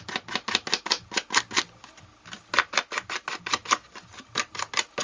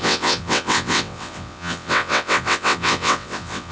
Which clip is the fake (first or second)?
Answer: second